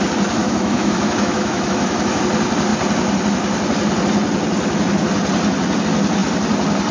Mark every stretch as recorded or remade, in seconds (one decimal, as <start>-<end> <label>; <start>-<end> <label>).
0.0-0.4 recorded; 0.4-2.2 remade; 2.2-6.9 recorded